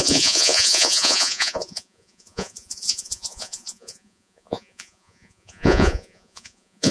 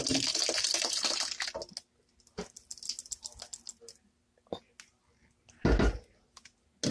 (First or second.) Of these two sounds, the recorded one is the second